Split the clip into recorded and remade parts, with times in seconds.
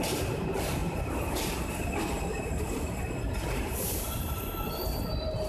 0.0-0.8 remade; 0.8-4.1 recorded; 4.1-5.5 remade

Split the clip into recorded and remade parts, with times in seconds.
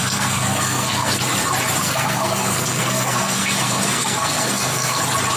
0.0-1.2 remade; 1.2-1.8 recorded; 1.8-5.0 remade; 5.0-5.4 recorded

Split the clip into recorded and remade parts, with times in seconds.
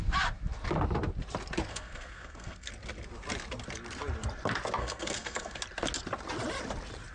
0.0-1.7 recorded; 1.7-2.7 remade; 2.7-4.8 recorded; 4.8-5.6 remade; 5.6-7.1 recorded